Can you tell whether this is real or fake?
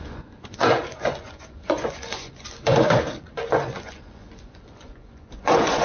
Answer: fake